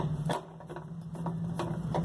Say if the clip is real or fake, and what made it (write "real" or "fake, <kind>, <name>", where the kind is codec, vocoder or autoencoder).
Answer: real